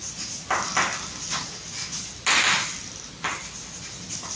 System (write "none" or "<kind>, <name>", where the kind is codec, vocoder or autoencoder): none